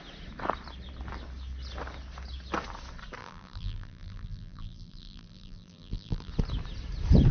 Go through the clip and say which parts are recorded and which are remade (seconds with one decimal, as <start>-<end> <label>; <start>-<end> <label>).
0.0-3.2 recorded; 3.2-6.3 remade; 6.3-7.3 recorded